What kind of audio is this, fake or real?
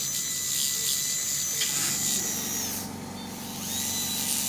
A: real